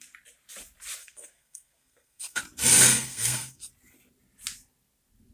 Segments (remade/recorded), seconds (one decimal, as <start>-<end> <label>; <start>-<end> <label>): 0.0-1.0 recorded; 1.0-2.4 remade; 2.4-2.9 recorded; 2.9-3.7 remade; 3.7-5.3 recorded